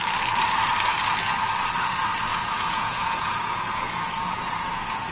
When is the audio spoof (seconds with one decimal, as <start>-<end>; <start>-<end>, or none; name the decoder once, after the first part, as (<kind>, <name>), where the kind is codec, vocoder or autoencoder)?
2.3-5.1 (vocoder, Vocos)